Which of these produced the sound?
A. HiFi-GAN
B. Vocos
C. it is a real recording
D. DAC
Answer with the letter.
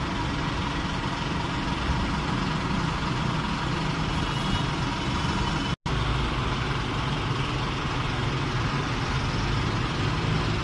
C